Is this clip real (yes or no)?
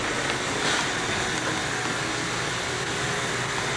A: yes